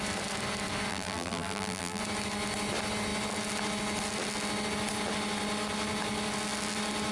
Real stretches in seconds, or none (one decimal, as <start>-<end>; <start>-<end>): 0.0-0.9; 2.0-7.1